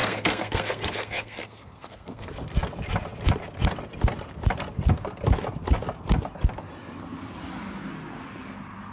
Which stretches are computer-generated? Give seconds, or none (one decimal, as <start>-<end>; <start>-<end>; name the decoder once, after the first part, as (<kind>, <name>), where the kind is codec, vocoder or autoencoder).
0.0-2.3 (codec, SNAC)